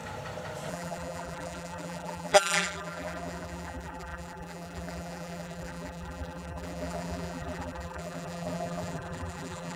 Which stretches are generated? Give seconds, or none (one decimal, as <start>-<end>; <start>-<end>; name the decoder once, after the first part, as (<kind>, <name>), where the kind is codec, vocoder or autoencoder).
0.7-9.8 (vocoder, BigVGAN v2)